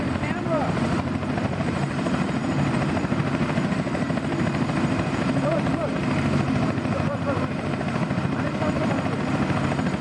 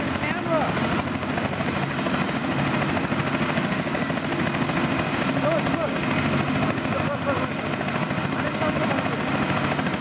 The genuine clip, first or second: second